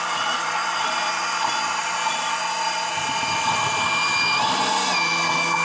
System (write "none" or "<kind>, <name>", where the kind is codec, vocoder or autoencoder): none